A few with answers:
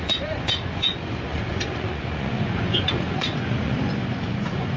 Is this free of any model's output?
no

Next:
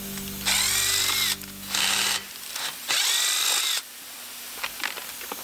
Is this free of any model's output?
yes